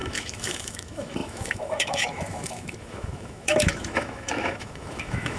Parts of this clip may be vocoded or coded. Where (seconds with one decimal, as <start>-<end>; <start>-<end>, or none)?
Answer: 0.0-5.4